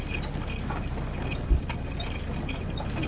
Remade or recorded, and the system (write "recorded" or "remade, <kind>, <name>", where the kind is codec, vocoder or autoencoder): recorded